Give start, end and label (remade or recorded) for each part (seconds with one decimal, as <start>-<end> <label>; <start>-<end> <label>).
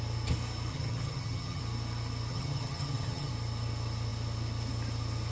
0.0-0.7 recorded; 0.7-1.6 remade; 1.6-2.3 recorded; 2.3-3.3 remade; 3.3-5.3 recorded